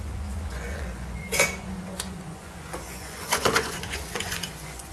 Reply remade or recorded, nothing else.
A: remade